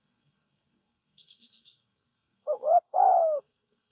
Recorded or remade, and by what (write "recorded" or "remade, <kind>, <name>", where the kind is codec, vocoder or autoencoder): remade, codec, SNAC